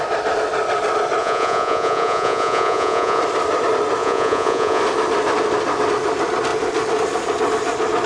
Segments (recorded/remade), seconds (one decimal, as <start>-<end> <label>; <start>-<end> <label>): 0.0-1.2 recorded; 1.2-3.2 remade; 3.2-4.0 recorded; 4.0-4.8 remade; 4.8-8.1 recorded